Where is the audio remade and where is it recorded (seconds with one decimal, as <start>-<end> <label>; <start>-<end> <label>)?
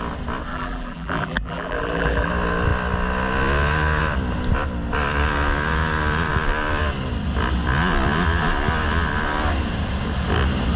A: 0.0-0.5 recorded; 0.5-2.3 remade; 2.3-10.8 recorded